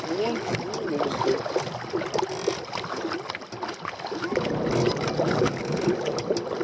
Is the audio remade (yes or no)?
no